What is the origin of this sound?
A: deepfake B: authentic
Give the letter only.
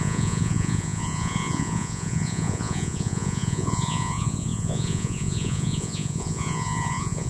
A